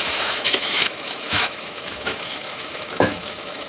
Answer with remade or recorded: remade